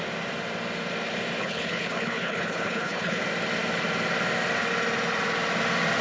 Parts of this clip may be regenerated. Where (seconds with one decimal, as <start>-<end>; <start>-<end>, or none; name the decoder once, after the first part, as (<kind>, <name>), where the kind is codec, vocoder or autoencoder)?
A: 1.4-3.2 (codec, HILCodec)